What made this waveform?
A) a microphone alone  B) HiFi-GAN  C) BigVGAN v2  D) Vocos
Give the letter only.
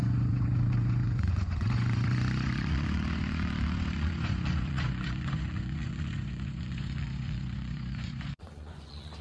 D